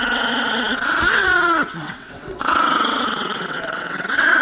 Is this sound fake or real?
fake